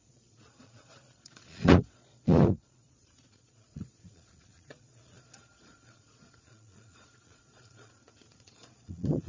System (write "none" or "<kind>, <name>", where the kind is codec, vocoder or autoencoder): vocoder, Vocos